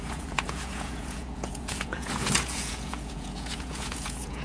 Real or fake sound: fake